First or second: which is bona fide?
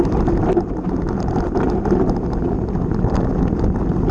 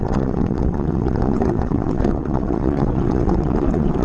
first